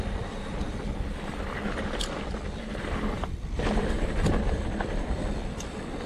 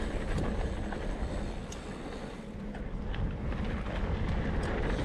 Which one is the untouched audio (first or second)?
second